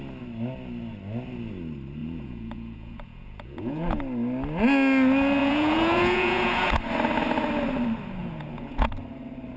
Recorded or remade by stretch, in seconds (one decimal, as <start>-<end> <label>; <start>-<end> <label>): 0.0-2.0 recorded; 2.0-4.0 remade; 4.0-5.4 recorded; 5.4-6.8 remade; 6.8-8.2 recorded; 8.2-8.9 remade; 8.9-9.6 recorded